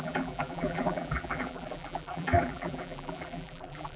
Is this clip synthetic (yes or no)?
yes